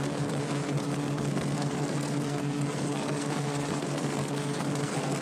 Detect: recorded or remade remade